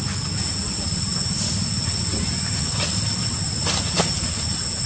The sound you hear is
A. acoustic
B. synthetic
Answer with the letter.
A